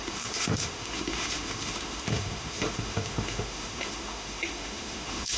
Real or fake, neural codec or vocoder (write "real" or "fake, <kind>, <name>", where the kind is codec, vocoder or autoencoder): fake, autoencoder, DAC-VAE